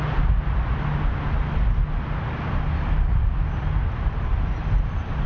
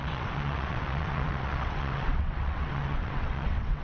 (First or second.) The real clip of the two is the first